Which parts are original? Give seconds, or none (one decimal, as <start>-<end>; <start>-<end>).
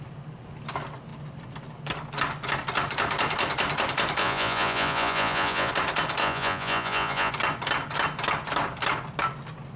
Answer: 0.0-4.2; 5.7-6.2; 7.3-9.8